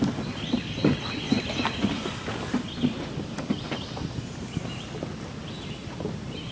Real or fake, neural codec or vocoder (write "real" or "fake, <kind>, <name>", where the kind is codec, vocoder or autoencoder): real